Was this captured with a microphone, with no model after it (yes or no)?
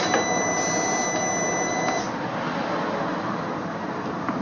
yes